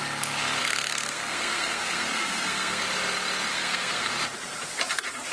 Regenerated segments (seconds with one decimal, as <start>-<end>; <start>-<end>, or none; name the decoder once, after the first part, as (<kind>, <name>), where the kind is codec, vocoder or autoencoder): 0.6-2.8 (codec, SNAC); 3.5-4.1